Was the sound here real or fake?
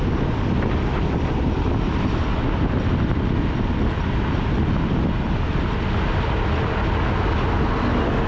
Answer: real